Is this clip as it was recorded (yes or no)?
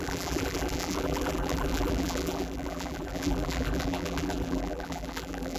no